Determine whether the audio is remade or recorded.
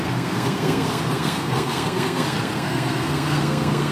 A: remade